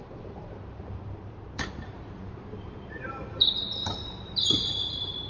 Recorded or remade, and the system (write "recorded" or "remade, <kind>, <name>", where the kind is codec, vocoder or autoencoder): remade, vocoder, BigVGAN v2